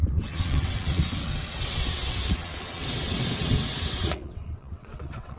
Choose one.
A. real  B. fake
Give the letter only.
B